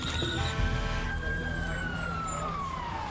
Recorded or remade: remade